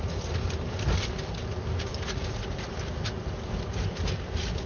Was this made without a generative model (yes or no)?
yes